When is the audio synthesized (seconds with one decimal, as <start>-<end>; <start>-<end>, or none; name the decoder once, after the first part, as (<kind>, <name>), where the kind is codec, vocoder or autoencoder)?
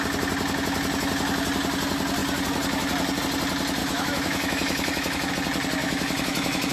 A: 3.8-5.3 (autoencoder, DAC-VAE); 5.8-6.7